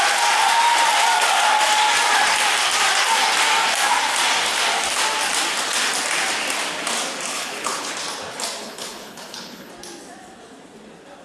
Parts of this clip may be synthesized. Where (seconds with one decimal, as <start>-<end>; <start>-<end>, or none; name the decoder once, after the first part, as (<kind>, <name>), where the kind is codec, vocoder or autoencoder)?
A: 7.3-7.9 (codec, HILCodec); 8.6-9.7